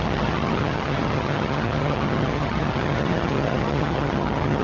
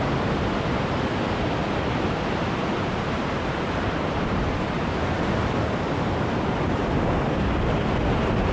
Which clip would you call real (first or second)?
second